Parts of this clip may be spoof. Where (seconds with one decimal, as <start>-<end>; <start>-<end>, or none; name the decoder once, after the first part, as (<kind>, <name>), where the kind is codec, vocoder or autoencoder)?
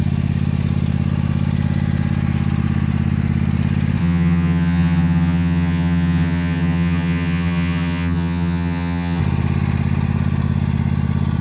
4.0-9.2 (vocoder, HiFi-GAN)